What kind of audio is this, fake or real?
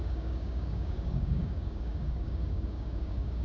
fake